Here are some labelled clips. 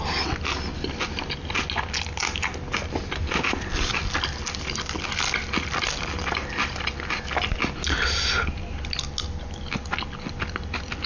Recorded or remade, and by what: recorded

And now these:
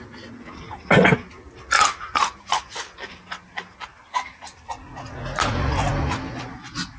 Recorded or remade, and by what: recorded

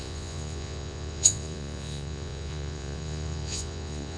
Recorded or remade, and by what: remade, vocoder, Vocos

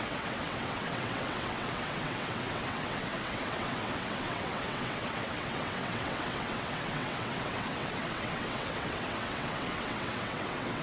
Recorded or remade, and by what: remade, vocoder, WaveNeXt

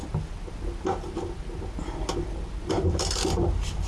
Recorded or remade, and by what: recorded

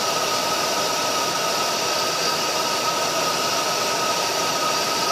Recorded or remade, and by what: recorded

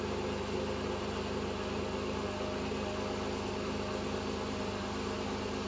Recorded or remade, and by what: recorded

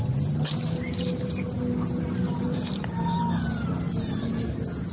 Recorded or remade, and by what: recorded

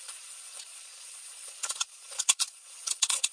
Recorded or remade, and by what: remade, vocoder, Vocos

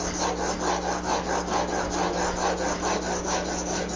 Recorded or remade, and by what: recorded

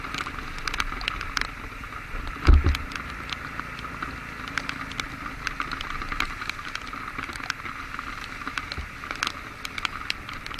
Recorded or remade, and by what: recorded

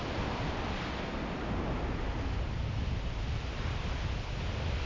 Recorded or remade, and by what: recorded